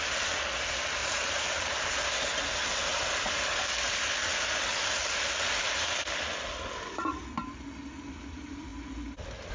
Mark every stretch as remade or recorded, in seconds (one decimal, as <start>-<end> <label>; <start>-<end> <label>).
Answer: 0.0-9.5 recorded

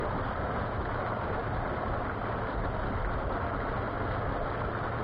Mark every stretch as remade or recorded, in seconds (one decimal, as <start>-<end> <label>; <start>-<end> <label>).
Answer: 0.0-5.0 recorded

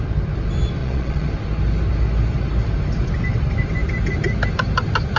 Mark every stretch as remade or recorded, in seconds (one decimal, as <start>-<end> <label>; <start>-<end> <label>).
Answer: 0.0-0.8 recorded; 0.8-1.3 remade; 1.3-5.2 recorded

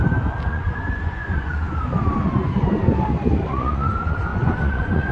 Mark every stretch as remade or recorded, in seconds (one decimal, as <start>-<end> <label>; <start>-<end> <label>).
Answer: 0.0-0.5 recorded; 0.5-1.9 remade; 1.9-3.5 recorded; 3.5-5.1 remade

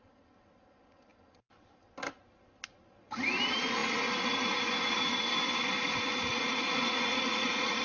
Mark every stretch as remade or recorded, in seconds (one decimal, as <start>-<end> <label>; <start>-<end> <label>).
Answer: 0.0-6.3 recorded; 6.3-7.8 remade

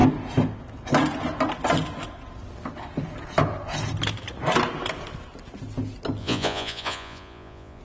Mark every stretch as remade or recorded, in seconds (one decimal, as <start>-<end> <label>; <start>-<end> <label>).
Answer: 0.0-6.2 recorded; 6.2-7.8 remade